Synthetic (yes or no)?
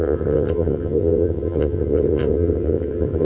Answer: yes